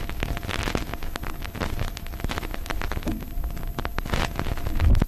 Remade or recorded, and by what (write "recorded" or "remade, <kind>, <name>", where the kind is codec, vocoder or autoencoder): recorded